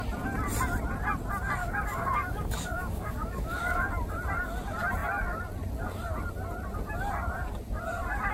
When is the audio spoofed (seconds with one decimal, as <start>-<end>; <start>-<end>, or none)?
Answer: 1.6-3.9